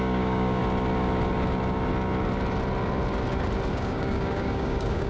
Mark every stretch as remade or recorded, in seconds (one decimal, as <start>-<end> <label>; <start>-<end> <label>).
0.0-0.6 remade; 0.6-3.7 recorded; 3.7-5.1 remade